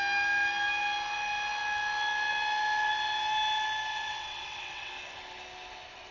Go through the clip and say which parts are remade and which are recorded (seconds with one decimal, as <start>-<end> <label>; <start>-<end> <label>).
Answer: 0.0-3.9 recorded; 3.9-4.9 remade; 4.9-6.1 recorded